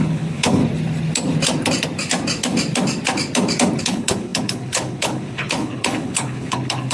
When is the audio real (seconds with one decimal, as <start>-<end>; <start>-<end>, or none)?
0.6-3.8